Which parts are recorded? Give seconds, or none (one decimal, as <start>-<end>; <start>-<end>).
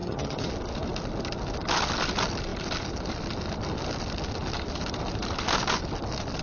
0.5-6.4